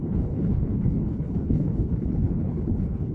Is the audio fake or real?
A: fake